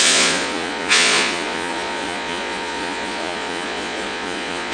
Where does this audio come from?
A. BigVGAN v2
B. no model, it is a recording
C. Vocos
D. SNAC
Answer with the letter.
C